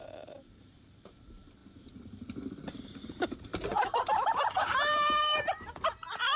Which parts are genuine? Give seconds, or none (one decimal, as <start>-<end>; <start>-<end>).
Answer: 1.6-2.6